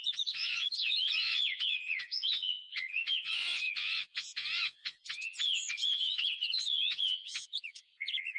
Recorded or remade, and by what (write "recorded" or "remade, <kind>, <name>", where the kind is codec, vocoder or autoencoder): remade, vocoder, Vocos